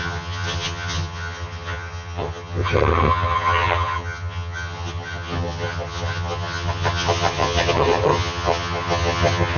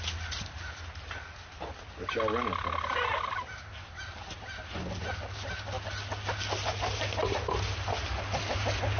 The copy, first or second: first